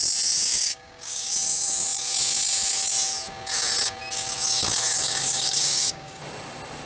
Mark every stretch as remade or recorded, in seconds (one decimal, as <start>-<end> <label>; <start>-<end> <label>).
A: 0.0-0.5 recorded; 0.5-1.3 remade; 1.3-5.0 recorded; 5.0-6.2 remade; 6.2-6.9 recorded